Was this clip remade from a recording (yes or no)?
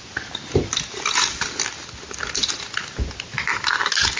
no